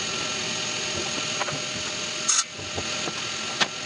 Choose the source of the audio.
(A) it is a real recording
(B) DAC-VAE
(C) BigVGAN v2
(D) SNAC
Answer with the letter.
A